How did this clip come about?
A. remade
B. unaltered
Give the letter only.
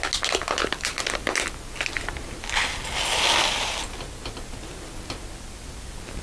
B